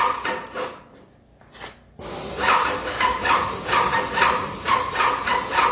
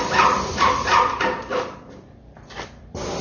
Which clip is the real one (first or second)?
first